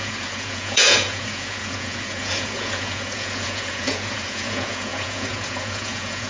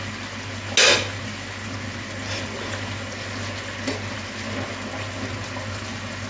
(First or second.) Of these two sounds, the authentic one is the second